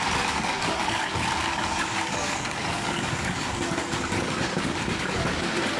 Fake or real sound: fake